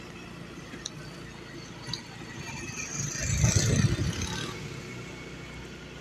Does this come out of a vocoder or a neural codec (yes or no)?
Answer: no